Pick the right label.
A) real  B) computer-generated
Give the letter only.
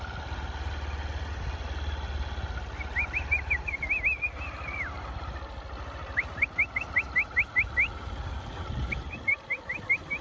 A